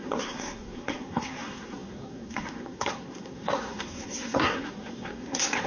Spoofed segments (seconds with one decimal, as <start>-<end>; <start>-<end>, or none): 0.0-5.7